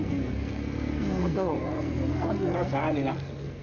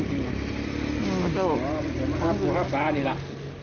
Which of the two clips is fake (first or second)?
first